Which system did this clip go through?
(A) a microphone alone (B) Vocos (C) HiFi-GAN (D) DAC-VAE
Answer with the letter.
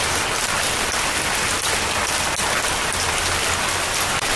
A